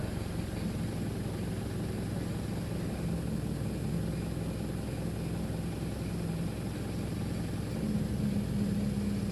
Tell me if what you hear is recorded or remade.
recorded